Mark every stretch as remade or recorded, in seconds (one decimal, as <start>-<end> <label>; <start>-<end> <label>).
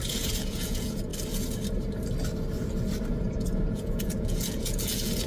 0.0-1.1 remade; 1.1-3.1 recorded; 3.1-5.3 remade